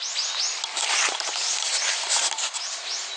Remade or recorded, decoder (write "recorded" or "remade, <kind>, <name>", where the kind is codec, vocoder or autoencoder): recorded